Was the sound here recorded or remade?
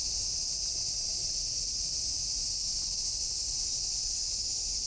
recorded